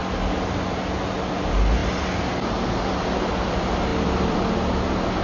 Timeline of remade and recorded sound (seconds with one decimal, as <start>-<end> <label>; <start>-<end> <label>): 0.0-3.9 recorded; 3.9-4.4 remade; 4.4-5.2 recorded